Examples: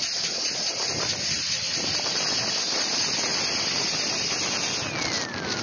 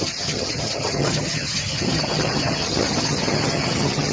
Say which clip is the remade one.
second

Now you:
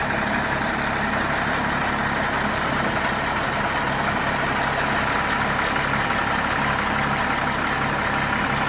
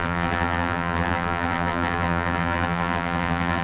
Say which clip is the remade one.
second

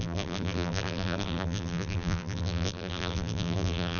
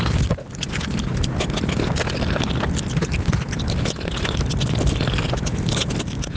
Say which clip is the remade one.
first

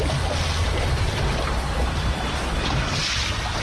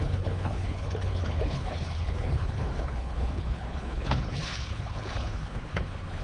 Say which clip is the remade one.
second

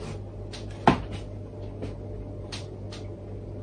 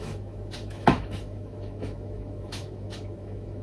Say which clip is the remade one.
second